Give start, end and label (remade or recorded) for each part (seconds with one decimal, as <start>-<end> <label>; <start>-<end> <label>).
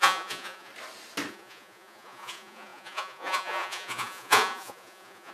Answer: 0.0-0.7 remade; 0.7-1.3 recorded; 1.3-5.3 remade